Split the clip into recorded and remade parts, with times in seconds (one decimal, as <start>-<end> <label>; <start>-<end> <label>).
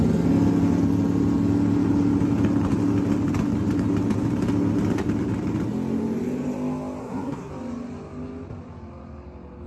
0.0-7.0 recorded; 7.0-7.5 remade; 7.5-9.7 recorded